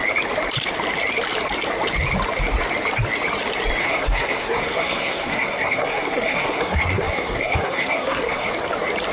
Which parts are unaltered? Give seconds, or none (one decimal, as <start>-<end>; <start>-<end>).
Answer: 0.0-3.8; 8.5-9.1